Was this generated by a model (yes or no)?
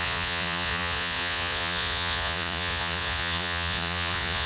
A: yes